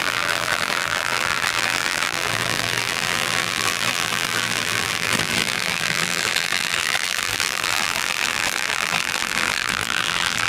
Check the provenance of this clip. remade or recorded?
remade